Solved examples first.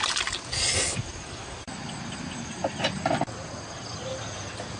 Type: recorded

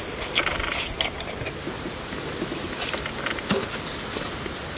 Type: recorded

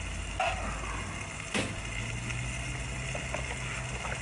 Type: recorded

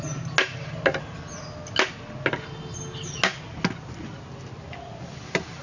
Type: recorded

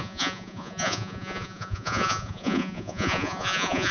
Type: remade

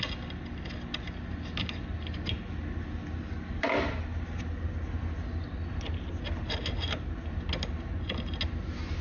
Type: recorded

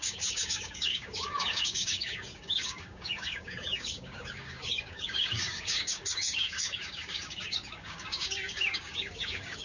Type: remade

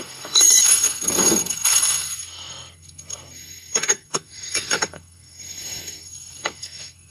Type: remade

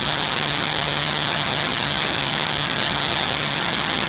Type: remade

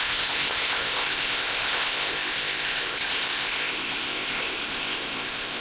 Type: remade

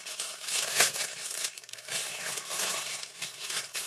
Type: remade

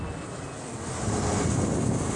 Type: recorded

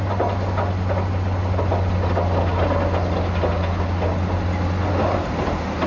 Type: recorded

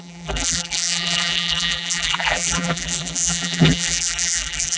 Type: remade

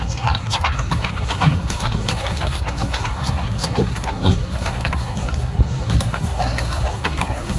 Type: remade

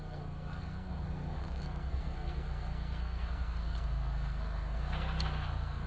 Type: remade